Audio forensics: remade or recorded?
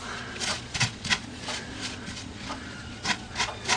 remade